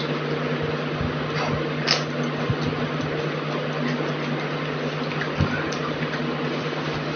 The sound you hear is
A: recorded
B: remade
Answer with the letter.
A